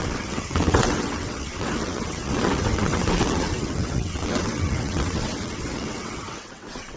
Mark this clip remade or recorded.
remade